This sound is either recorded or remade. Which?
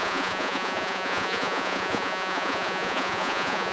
remade